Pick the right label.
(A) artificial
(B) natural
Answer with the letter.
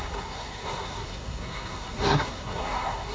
A